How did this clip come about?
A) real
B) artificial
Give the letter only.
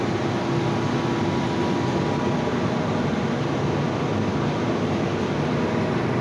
A